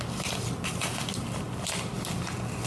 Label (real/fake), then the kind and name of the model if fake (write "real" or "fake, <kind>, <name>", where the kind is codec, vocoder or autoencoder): real